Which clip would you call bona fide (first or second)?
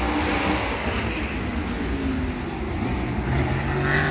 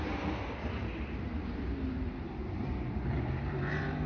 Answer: first